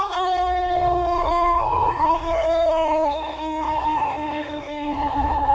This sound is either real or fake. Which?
fake